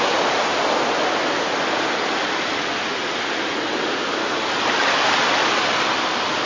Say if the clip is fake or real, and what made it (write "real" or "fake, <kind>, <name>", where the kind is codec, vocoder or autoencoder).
real